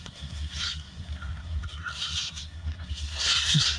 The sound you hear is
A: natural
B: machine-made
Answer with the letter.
B